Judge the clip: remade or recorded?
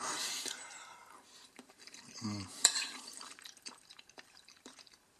remade